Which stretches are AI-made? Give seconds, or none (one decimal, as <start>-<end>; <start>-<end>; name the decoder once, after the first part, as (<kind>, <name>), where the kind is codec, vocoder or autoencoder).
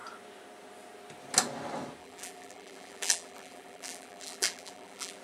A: 2.0-5.2 (vocoder, BigVGAN v2)